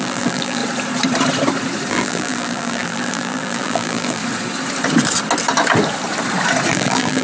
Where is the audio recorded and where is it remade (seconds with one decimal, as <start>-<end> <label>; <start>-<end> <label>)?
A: 0.0-0.6 remade; 0.6-1.9 recorded; 1.9-4.2 remade; 4.2-6.7 recorded; 6.7-7.2 remade